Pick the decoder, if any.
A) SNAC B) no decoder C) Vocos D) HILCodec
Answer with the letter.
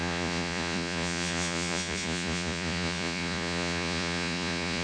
C